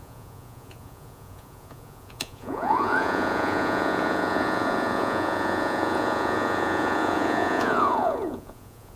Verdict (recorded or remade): remade